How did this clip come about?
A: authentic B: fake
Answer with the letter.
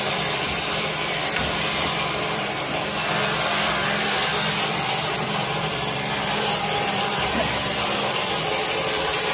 B